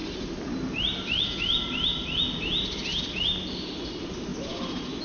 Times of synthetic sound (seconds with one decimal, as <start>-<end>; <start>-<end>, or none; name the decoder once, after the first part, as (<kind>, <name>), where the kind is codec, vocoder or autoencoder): none